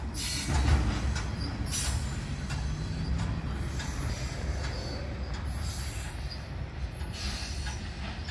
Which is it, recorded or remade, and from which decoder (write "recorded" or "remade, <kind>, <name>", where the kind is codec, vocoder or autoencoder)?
recorded